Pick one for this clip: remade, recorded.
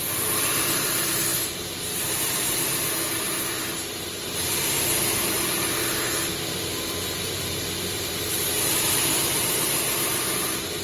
remade